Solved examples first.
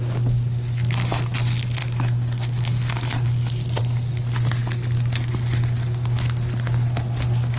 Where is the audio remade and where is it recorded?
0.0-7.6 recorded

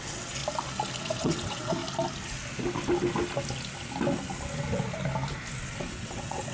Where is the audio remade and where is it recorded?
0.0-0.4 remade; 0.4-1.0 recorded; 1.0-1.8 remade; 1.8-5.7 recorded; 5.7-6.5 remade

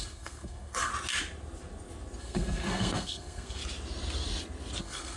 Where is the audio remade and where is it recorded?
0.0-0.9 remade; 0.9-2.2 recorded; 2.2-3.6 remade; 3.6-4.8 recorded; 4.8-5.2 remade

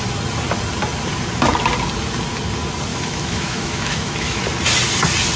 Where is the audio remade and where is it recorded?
0.0-2.9 recorded; 2.9-4.4 remade; 4.4-5.4 recorded

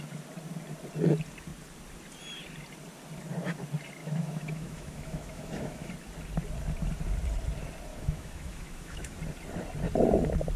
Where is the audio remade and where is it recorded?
0.0-4.0 recorded; 4.0-5.9 remade; 5.9-7.9 recorded; 7.9-9.2 remade; 9.2-10.6 recorded

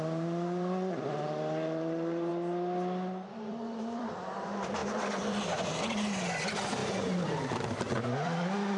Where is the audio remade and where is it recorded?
0.0-2.3 remade; 2.3-3.3 recorded; 3.3-4.8 remade; 4.8-5.4 recorded; 5.4-8.8 remade

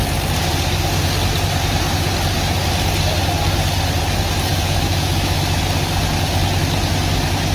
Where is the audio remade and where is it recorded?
0.0-4.5 recorded; 4.5-5.6 remade; 5.6-7.5 recorded

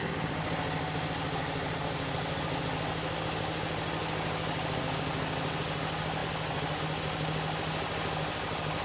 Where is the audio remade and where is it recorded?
0.0-1.4 recorded; 1.4-2.6 remade; 2.6-8.8 recorded